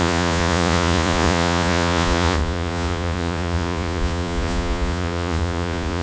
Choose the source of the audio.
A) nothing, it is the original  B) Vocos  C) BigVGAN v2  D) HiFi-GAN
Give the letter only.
B